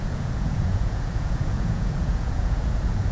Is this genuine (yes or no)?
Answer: no